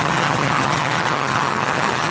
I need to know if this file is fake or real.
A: fake